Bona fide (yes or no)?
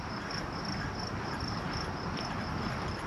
yes